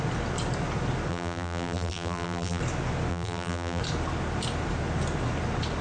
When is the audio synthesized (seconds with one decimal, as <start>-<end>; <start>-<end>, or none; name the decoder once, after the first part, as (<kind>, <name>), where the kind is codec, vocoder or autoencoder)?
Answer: 1.1-2.6 (vocoder, BigVGAN v2); 3.1-3.8